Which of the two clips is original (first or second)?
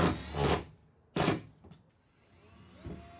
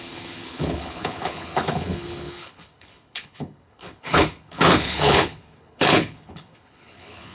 first